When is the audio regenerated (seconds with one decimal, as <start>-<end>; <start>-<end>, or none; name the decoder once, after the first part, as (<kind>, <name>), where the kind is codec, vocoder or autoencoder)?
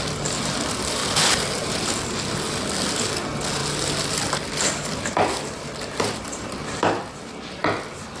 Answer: none